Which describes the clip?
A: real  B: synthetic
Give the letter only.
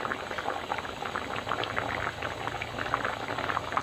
A